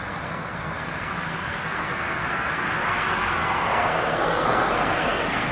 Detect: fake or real fake